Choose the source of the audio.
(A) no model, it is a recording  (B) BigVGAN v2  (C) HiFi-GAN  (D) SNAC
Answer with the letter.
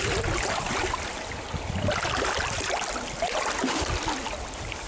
A